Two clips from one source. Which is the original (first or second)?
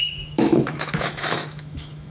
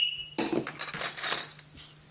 second